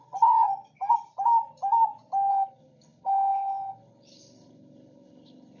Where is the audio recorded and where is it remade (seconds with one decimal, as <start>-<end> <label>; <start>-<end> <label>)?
0.0-0.5 remade; 0.5-2.3 recorded; 2.3-5.6 remade